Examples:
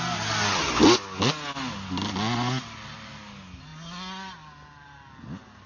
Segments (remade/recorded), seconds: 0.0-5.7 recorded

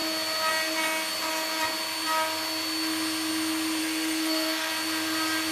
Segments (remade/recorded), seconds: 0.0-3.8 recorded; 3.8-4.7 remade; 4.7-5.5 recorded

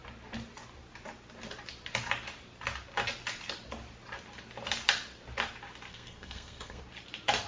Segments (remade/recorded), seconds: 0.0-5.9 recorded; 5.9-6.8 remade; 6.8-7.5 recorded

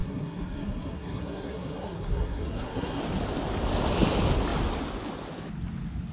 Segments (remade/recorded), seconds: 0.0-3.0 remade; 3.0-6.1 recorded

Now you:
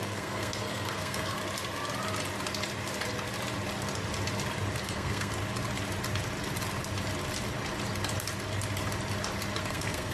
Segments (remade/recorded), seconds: 0.0-1.4 remade; 1.4-4.8 recorded; 4.8-5.3 remade; 5.3-9.6 recorded; 9.6-10.1 remade

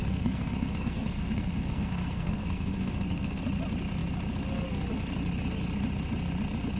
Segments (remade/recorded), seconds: 0.0-3.4 remade; 3.4-6.8 recorded

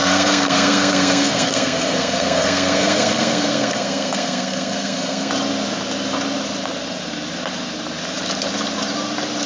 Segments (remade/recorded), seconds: 0.0-5.3 remade; 5.3-9.5 recorded